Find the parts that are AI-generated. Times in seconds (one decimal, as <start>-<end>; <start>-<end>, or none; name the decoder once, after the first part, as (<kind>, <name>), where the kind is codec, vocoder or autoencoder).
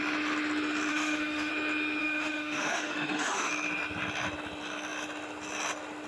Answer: 0.9-1.5 (autoencoder, DAC-VAE); 2.0-3.5